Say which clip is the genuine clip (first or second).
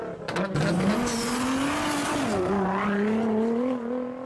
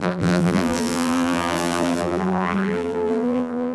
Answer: first